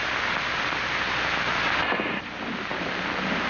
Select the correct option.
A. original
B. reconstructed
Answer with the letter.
A